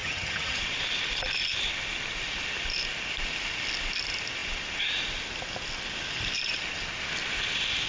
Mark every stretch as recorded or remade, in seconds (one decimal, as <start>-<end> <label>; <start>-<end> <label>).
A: 0.0-0.6 remade; 0.6-7.9 recorded